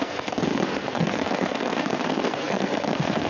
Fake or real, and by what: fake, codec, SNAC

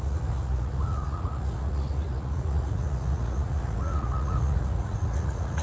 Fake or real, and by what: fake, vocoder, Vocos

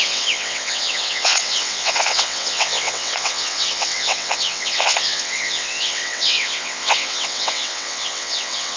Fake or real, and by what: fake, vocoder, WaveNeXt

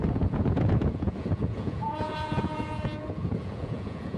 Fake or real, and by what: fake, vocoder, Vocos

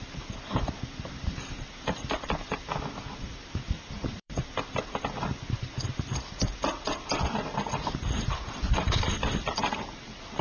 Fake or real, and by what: fake, vocoder, BigVGAN v2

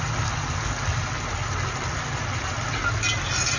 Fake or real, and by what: real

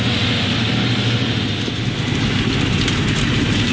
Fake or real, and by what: real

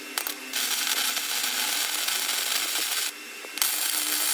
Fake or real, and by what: real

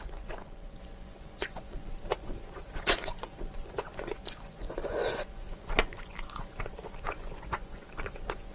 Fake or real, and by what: fake, vocoder, Vocos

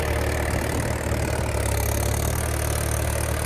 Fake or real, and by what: real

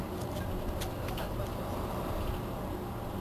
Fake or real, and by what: real